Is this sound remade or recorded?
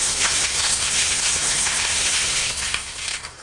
remade